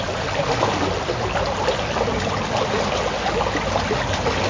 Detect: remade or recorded recorded